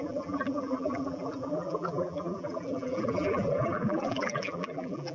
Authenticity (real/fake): fake